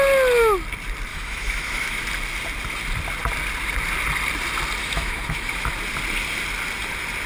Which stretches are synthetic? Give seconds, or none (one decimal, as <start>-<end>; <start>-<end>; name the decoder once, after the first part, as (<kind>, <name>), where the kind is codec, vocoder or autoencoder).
1.1-2.0 (autoencoder, DAC-VAE); 4.8-5.7